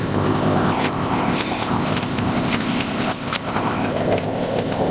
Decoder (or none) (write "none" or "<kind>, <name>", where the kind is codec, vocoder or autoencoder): codec, ZipCodec